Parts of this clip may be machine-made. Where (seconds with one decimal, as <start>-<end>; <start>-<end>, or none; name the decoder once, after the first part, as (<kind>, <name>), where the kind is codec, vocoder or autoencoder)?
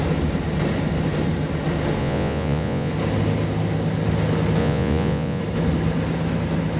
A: 2.0-2.9 (vocoder, Vocos); 4.6-5.4